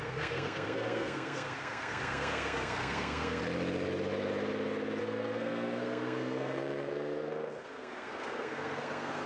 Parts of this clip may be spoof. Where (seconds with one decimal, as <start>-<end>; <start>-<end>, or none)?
0.0-3.4; 5.0-9.3